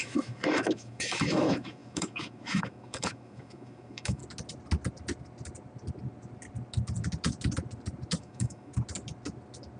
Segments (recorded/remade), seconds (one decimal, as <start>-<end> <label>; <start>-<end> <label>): 0.0-4.2 remade; 4.2-8.2 recorded; 8.2-8.7 remade; 8.7-9.8 recorded